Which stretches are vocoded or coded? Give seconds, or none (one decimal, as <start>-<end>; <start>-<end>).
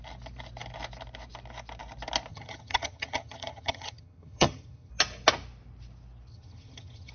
2.3-4.9; 6.3-7.1